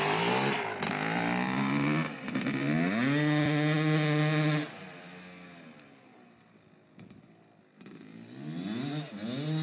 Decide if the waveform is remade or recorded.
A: recorded